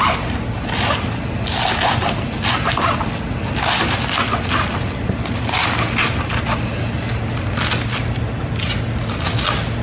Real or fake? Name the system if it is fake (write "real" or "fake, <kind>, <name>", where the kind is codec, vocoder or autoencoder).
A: real